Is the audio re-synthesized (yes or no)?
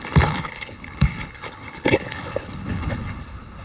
yes